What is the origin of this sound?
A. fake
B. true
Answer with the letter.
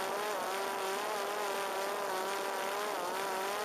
B